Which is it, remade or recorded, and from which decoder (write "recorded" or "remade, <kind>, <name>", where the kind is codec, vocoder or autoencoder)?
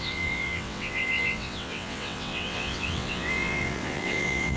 remade, vocoder, WaveNeXt